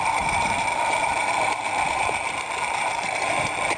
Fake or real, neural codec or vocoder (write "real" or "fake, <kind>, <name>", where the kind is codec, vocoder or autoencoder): fake, vocoder, BigVGAN v2